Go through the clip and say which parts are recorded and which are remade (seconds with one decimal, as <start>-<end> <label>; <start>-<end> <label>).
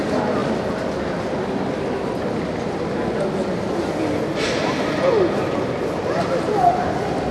0.0-7.3 recorded